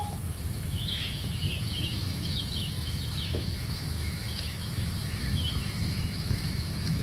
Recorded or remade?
remade